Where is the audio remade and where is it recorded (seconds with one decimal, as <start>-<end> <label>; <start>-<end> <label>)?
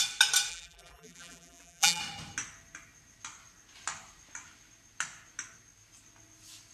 0.0-0.5 recorded; 0.5-2.0 remade; 2.0-6.7 recorded